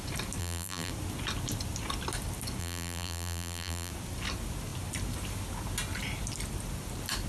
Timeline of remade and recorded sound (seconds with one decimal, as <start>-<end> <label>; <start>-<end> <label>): 0.0-0.4 recorded; 0.4-0.9 remade; 0.9-2.6 recorded; 2.6-3.9 remade; 3.9-7.3 recorded